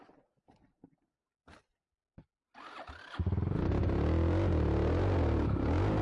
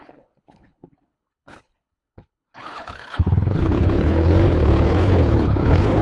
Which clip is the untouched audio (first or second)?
first